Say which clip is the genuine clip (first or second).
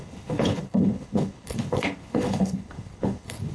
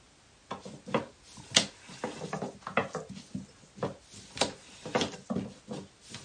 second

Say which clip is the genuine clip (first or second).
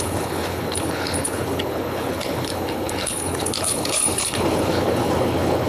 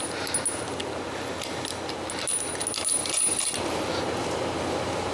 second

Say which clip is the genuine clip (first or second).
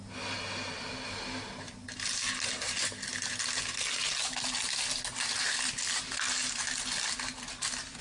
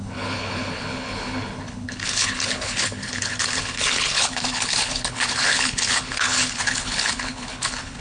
first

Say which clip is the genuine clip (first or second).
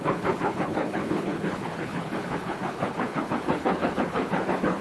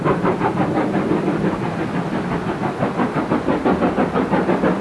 second